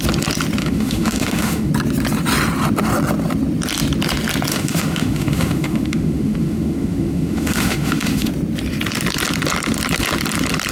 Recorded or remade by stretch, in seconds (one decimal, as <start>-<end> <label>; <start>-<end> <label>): 0.0-0.6 recorded; 0.6-1.7 remade; 1.7-4.5 recorded; 4.5-8.3 remade; 8.3-10.7 recorded